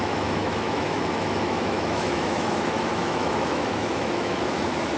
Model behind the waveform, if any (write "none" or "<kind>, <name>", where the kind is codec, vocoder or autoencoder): autoencoder, DAC-VAE